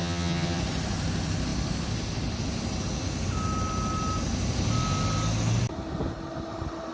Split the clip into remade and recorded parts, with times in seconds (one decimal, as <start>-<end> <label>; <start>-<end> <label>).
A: 0.0-0.6 remade; 0.6-6.9 recorded